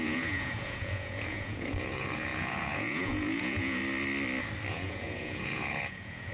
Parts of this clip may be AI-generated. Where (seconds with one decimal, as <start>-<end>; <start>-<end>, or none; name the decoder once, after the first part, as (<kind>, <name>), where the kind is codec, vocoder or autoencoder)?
0.0-3.8 (vocoder, Vocos); 4.7-6.3